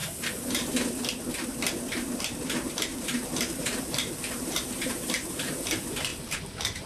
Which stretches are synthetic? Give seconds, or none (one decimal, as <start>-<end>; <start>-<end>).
2.9-5.6; 6.1-6.9